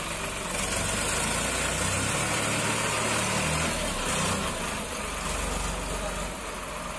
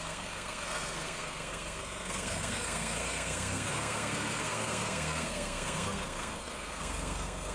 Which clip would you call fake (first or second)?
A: second